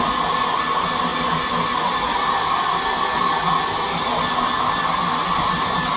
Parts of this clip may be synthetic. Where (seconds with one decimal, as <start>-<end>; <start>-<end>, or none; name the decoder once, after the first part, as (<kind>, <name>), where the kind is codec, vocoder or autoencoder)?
none